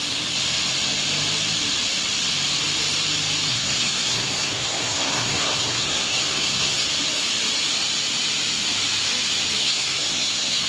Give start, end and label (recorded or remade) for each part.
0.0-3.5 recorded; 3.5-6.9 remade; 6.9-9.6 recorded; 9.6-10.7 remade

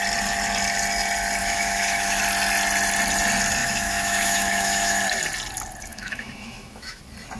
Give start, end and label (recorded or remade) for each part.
0.0-1.4 recorded; 1.4-2.2 remade; 2.2-3.6 recorded; 3.6-5.0 remade; 5.0-5.9 recorded; 5.9-7.0 remade; 7.0-7.4 recorded

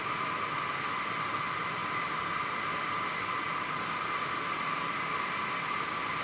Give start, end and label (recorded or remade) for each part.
0.0-6.2 recorded

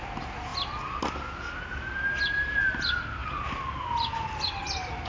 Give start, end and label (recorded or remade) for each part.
0.0-5.1 recorded

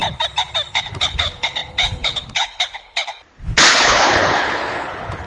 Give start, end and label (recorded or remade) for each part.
0.0-0.7 recorded; 0.7-3.1 remade; 3.1-3.7 recorded; 3.7-5.3 remade

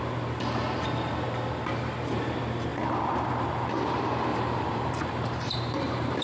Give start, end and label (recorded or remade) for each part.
0.0-4.3 recorded; 4.3-6.2 remade